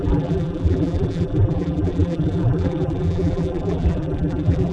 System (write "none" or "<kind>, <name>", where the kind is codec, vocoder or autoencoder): vocoder, BigVGAN v2